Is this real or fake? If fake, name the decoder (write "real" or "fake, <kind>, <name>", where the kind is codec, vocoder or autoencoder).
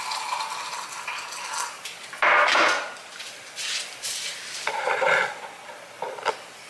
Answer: real